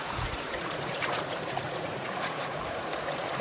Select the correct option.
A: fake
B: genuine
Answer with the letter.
A